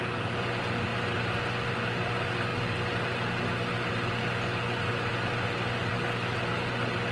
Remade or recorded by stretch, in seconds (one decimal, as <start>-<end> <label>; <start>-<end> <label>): 0.0-7.1 recorded